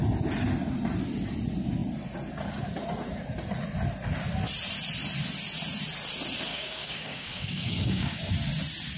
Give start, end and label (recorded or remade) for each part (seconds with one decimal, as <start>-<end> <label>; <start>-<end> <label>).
0.0-6.5 recorded; 6.5-8.3 remade; 8.3-9.0 recorded